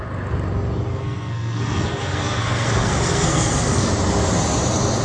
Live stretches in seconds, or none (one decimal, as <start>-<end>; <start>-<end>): 0.0-0.9; 3.9-5.0